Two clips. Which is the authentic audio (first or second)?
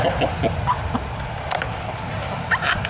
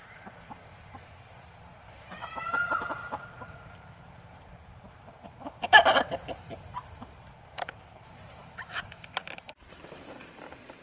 first